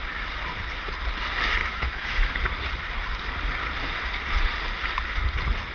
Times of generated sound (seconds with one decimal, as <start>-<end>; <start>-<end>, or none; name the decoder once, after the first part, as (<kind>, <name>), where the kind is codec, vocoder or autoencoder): 1.6-2.3 (autoencoder, DAC-VAE)